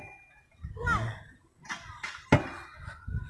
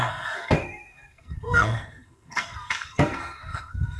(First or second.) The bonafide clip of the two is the first